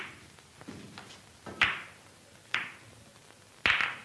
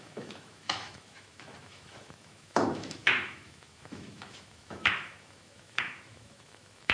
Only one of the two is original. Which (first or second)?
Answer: first